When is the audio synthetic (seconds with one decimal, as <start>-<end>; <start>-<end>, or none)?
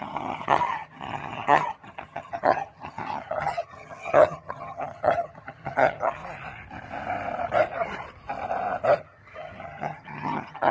0.0-6.2; 9.0-10.7